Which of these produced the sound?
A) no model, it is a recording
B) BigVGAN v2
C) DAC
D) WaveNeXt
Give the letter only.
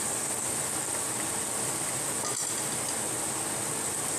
A